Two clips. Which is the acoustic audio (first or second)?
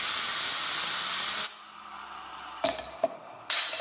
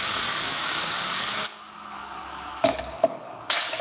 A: first